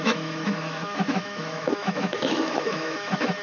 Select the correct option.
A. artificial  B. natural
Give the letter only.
A